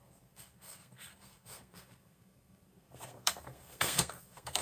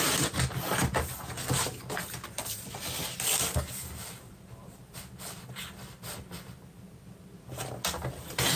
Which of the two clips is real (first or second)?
second